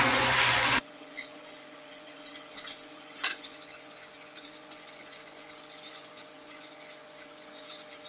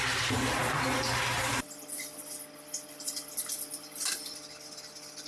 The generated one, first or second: first